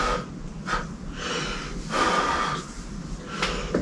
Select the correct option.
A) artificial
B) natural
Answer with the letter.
B